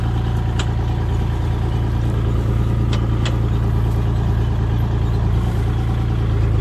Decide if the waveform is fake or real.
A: real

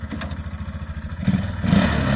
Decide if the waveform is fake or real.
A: real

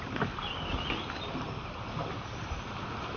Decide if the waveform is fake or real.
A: real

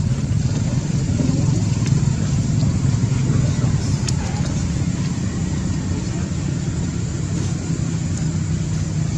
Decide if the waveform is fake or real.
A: real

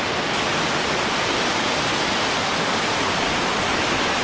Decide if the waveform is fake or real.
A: real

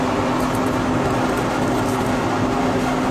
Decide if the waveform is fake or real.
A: real